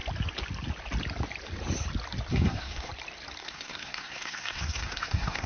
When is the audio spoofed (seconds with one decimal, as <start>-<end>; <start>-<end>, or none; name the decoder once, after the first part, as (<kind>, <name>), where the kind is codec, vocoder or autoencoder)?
2.3-2.9 (codec, SNAC); 3.4-5.5